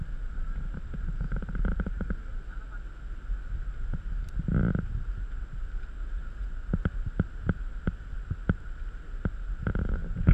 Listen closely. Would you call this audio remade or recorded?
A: recorded